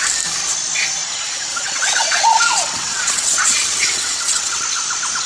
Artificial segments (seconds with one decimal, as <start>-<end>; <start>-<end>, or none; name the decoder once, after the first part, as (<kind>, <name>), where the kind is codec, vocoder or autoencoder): 1.5-4.6 (vocoder, WaveNeXt)